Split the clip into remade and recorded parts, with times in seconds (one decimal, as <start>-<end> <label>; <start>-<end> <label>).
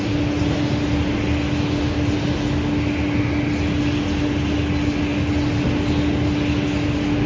0.0-7.3 recorded